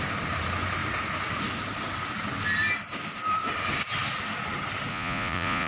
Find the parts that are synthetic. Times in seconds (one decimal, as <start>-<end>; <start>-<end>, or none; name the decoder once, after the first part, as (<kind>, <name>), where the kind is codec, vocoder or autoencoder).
4.9-5.7 (vocoder, Vocos)

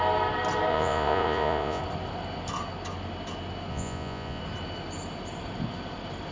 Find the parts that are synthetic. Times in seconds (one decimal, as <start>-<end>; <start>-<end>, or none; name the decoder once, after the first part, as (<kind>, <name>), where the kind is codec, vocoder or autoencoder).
0.7-1.8 (vocoder, Vocos); 3.7-4.4

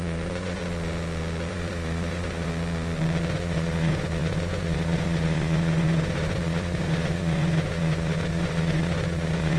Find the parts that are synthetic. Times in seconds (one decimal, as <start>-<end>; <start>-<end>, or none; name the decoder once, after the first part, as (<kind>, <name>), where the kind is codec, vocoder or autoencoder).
0.0-0.6 (vocoder, Vocos); 1.5-2.5; 3.3-9.6

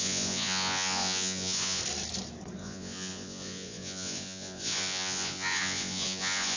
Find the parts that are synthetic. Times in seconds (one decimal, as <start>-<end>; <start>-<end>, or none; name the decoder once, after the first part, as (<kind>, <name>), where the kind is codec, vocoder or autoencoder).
0.0-1.8 (vocoder, Vocos); 2.6-6.6

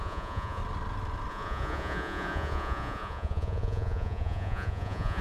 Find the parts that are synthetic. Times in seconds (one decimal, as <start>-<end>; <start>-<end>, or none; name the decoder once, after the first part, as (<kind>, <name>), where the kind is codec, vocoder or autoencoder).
0.0-0.6 (vocoder, Vocos); 1.3-5.2

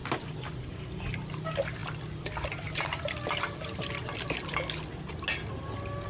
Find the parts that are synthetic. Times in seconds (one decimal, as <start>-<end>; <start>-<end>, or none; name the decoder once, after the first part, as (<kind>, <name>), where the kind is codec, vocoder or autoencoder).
none